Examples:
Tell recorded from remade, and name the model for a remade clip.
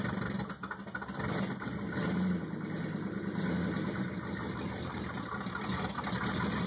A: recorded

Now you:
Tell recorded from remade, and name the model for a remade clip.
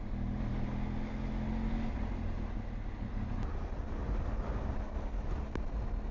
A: recorded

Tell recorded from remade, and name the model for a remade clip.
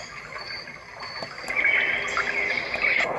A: recorded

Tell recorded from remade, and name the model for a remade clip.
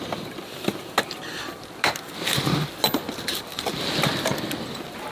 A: recorded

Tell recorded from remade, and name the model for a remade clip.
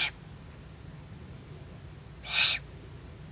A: recorded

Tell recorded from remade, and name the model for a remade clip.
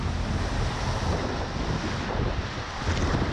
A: recorded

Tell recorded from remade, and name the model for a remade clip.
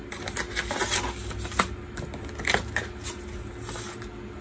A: recorded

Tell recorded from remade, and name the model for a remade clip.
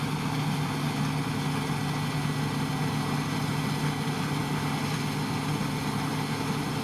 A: recorded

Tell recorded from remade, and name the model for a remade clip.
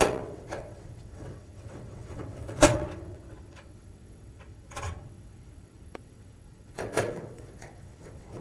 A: remade, vocoder, WaveNeXt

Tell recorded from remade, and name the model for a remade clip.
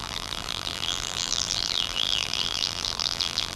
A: remade, vocoder, BigVGAN v2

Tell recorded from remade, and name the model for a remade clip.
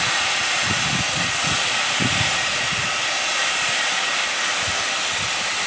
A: remade, vocoder, BigVGAN v2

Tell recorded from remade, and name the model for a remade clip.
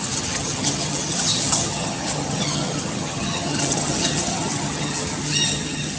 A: remade, vocoder, HiFi-GAN